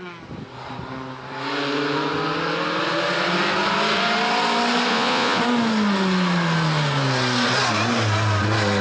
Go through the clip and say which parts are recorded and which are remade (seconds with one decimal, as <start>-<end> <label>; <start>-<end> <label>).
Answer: 0.0-4.9 recorded; 4.9-5.4 remade; 5.4-8.8 recorded